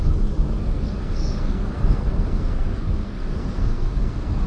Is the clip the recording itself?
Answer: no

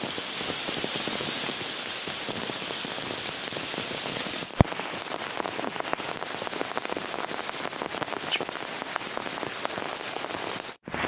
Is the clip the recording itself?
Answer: yes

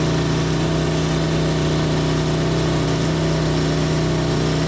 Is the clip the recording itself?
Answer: yes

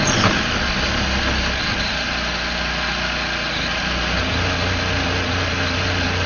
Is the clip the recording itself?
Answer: yes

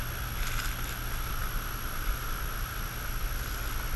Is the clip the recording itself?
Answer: yes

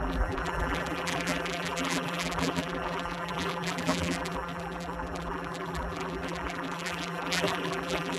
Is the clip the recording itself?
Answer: no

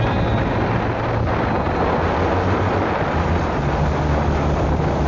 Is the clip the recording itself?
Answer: yes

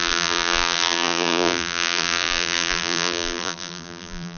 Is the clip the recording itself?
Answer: no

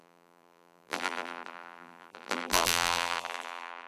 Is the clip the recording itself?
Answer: no